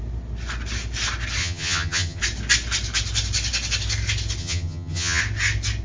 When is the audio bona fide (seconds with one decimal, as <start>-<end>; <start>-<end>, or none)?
0.0-1.4; 2.2-4.4; 5.2-5.8